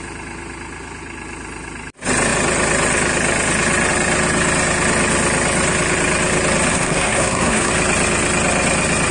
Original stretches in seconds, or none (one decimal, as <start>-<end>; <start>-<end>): 0.0-6.7; 7.7-9.1

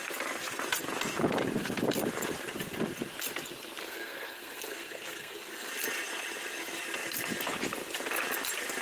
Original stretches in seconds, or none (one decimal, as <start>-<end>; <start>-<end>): 0.0-3.8; 5.7-8.8

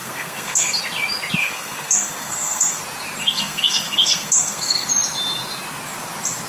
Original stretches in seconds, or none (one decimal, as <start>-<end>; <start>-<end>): 0.8-1.4; 2.8-3.2; 4.9-6.5

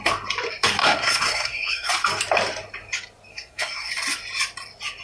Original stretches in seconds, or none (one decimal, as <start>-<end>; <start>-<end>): 0.0-0.8; 1.9-3.3; 3.9-5.0

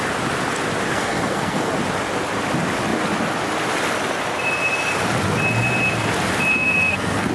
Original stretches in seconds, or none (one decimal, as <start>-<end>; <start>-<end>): 0.0-0.9; 1.7-6.5

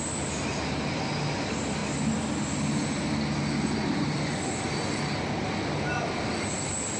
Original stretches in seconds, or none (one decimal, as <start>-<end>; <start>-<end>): 0.0-7.0

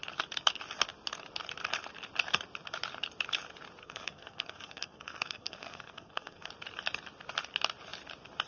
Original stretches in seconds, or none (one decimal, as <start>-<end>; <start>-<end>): 0.0-3.8; 6.5-8.5

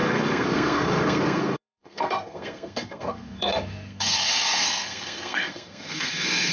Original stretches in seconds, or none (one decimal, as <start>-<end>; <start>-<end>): none